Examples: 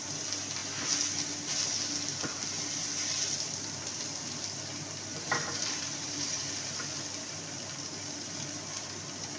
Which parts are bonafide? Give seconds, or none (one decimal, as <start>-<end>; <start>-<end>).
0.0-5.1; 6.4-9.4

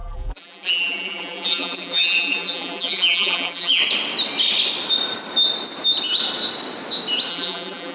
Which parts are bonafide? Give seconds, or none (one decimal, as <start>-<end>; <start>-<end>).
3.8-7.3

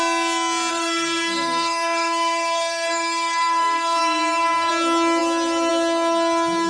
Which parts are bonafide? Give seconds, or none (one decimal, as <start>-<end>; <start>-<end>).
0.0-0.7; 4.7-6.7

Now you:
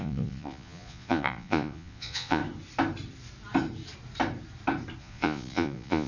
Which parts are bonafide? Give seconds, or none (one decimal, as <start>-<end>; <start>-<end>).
2.4-5.0

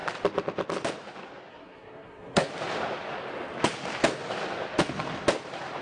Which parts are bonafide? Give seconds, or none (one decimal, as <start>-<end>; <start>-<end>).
0.0-1.5; 2.5-5.8

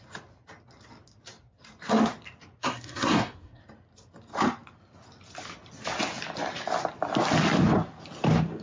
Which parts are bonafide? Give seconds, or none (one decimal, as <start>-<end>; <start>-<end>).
0.0-2.6; 3.6-8.6

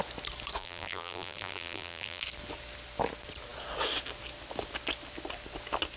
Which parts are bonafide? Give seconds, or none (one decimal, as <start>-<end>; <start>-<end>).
0.0-0.6; 2.2-6.0

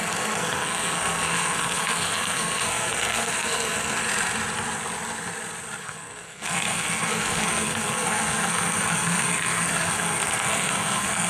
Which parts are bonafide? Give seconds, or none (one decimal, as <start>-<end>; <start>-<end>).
4.0-5.8